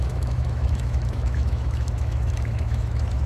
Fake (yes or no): yes